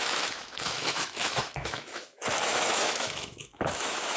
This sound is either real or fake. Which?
fake